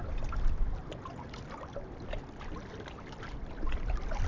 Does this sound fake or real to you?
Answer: real